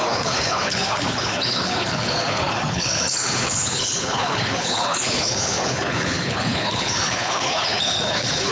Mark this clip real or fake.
fake